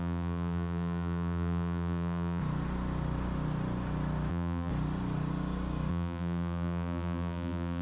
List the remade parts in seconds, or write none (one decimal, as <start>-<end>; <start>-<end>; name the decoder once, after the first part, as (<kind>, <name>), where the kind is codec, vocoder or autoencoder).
0.0-2.4 (vocoder, BigVGAN v2); 4.3-4.7; 5.9-7.8